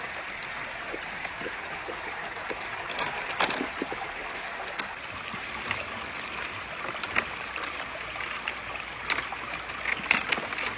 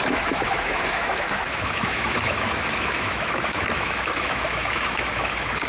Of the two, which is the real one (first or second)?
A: first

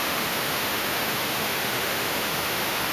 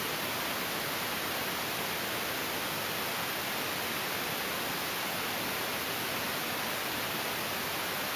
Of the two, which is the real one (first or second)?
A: second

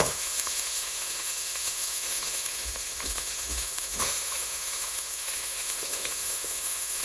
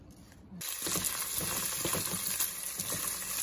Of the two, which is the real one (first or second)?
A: second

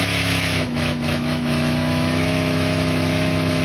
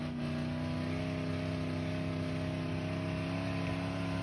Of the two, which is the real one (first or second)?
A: second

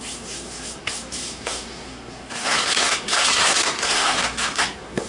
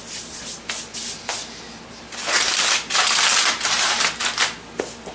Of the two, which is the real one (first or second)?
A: second